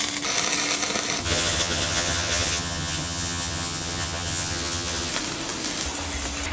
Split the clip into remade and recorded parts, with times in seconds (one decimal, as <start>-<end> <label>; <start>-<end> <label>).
0.0-1.2 recorded; 1.2-5.1 remade; 5.1-6.5 recorded